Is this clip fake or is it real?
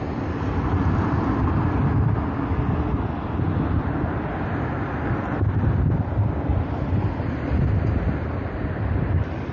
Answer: real